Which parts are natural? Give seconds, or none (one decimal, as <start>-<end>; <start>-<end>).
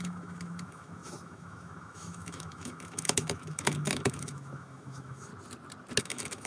5.3-6.0